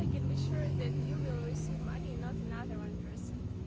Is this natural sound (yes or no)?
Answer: no